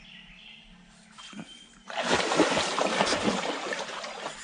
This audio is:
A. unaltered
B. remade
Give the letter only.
A